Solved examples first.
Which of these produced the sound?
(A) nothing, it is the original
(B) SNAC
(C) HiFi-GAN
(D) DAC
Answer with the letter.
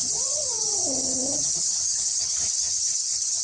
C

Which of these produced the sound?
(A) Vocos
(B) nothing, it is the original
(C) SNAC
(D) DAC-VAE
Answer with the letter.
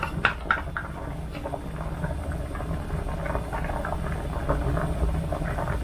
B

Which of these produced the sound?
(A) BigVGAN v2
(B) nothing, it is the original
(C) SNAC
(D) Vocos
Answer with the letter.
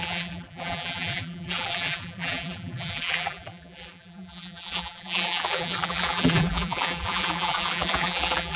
A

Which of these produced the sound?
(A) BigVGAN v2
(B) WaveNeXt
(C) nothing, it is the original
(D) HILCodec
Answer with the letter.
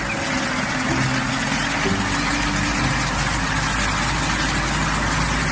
C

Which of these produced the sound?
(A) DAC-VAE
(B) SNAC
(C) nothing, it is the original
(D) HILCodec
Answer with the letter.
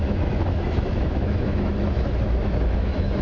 A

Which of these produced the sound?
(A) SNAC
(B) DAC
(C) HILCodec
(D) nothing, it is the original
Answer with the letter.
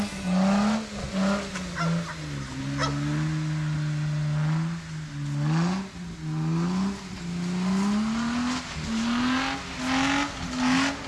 D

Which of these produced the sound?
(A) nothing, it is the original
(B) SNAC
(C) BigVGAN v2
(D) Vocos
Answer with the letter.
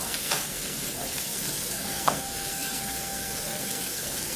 B